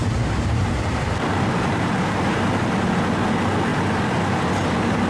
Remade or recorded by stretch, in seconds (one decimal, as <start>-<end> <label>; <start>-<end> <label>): 0.0-3.1 remade; 3.1-5.1 recorded